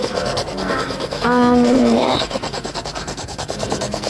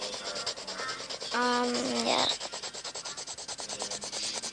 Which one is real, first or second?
second